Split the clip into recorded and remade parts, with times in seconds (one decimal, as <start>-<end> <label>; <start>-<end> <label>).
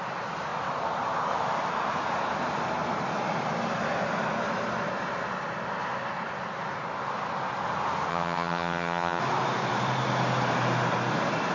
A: 0.0-8.1 recorded; 8.1-9.2 remade; 9.2-11.5 recorded